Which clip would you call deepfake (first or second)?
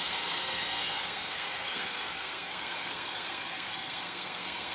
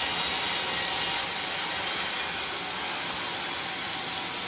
first